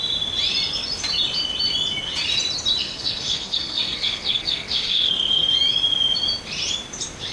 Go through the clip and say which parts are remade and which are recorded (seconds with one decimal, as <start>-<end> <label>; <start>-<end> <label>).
0.0-2.8 recorded; 2.8-5.5 remade; 5.5-7.3 recorded